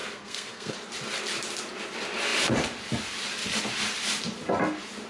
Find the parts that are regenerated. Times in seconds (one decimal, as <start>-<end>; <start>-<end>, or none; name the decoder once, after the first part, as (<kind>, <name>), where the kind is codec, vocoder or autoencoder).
0.0-0.7 (codec, SNAC)